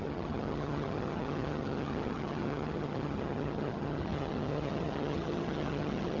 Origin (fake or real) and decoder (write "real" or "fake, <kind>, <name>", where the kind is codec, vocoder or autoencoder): fake, vocoder, HiFi-GAN